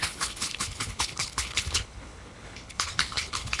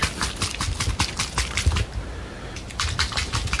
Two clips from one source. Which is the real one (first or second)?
second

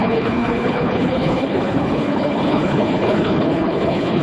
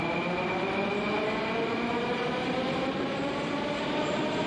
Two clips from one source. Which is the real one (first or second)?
second